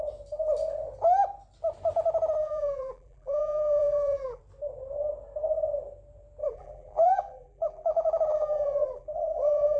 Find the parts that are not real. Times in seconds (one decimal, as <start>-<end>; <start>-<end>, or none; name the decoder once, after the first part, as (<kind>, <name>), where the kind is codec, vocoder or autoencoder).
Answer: 2.4-4.4 (vocoder, BigVGAN v2); 6.4-9.8

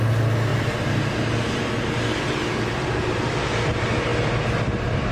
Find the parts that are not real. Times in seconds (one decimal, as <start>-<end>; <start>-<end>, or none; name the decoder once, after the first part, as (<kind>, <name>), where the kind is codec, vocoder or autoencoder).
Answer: 0.5-1.1 (vocoder, BigVGAN v2)